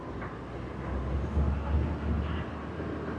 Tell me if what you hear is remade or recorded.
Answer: recorded